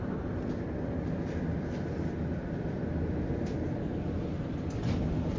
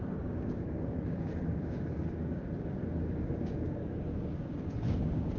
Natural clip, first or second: first